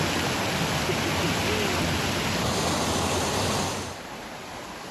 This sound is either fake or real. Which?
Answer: real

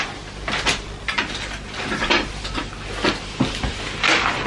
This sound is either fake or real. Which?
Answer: real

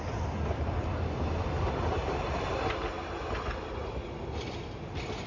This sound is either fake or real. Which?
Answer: real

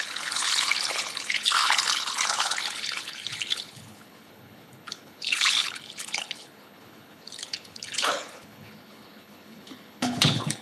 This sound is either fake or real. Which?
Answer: fake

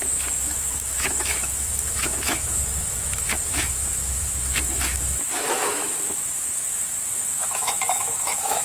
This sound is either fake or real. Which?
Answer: fake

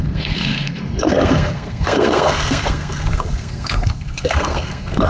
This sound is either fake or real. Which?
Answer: fake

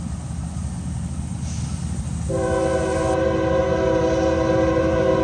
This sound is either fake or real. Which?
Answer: real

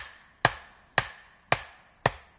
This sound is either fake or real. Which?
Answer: real